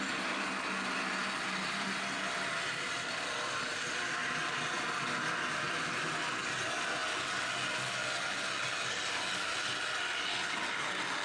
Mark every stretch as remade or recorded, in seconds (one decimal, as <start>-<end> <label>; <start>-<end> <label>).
0.0-11.2 recorded